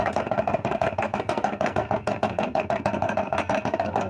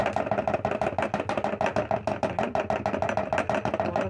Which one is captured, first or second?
second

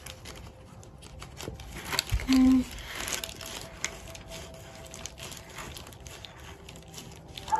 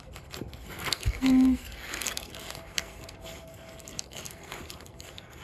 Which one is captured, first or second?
first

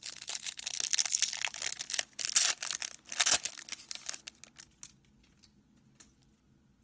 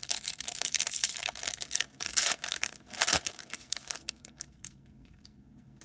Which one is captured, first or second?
first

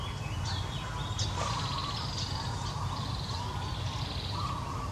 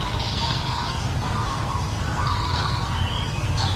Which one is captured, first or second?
first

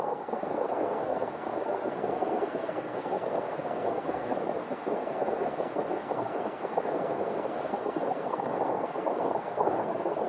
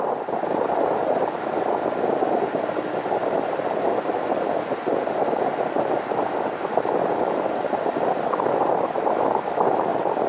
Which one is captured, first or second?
second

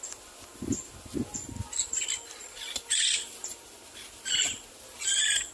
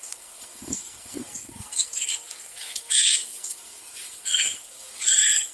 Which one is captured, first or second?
first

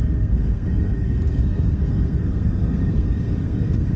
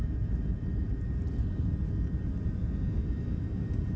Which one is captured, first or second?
second